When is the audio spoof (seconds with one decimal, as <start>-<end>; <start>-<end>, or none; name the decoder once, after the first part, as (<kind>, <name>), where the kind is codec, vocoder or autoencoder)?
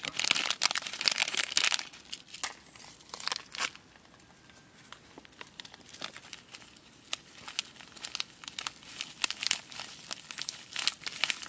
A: none